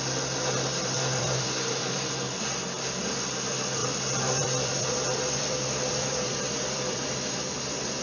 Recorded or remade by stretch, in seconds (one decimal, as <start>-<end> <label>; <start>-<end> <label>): 0.0-0.7 recorded; 0.7-2.1 remade; 2.1-3.8 recorded; 3.8-8.0 remade